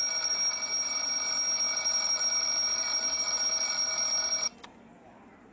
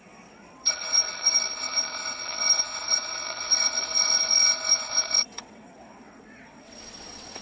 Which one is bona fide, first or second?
first